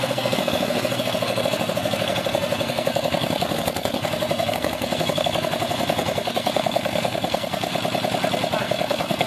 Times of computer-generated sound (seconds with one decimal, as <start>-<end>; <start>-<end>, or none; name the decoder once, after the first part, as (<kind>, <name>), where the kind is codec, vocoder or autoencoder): 0.0-7.7 (codec, SNAC); 8.6-9.3